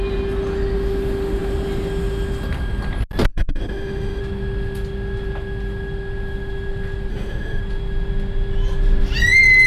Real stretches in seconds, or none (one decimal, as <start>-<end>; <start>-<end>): 0.0-3.3; 4.2-7.1; 7.6-9.7